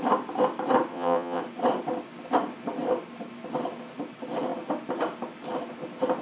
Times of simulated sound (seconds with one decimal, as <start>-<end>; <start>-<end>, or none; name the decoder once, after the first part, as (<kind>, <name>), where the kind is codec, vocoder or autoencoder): 0.9-1.4 (vocoder, WaveNeXt)